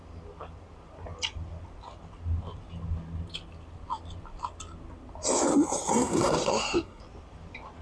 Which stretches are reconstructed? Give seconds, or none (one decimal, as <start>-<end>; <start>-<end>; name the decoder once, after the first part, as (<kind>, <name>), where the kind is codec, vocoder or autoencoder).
5.9-7.0 (codec, SNAC)